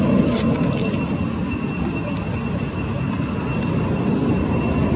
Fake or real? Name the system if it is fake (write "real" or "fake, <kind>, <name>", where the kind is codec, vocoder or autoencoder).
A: real